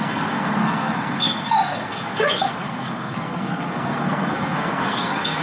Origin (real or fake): fake